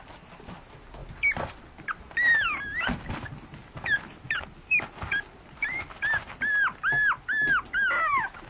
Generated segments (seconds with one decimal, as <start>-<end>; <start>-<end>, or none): none